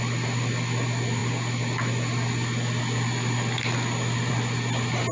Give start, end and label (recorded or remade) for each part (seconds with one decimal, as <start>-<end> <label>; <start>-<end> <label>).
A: 0.0-5.1 recorded